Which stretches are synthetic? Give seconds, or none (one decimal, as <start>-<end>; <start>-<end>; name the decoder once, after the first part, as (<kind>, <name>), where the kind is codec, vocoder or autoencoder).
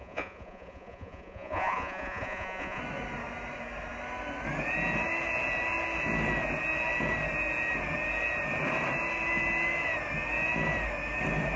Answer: 0.0-2.8 (vocoder, Vocos)